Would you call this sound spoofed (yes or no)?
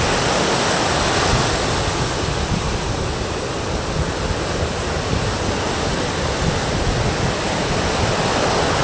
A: no